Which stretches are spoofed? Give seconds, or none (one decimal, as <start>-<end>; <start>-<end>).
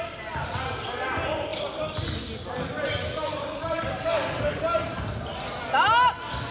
3.0-4.6